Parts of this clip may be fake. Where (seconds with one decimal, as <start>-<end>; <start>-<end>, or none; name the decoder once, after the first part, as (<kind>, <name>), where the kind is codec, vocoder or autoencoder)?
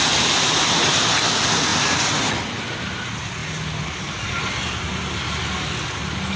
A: none